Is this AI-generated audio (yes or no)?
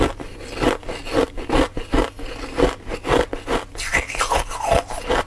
no